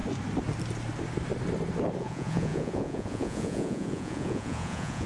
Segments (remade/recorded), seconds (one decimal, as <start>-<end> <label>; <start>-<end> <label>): 0.0-2.0 recorded; 2.0-5.1 remade